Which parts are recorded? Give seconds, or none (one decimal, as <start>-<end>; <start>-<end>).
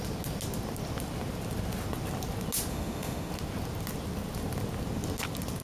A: 0.0-2.7; 3.3-5.6